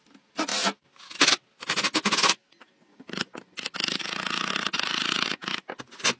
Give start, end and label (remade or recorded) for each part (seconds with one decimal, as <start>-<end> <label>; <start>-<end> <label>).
0.0-6.2 recorded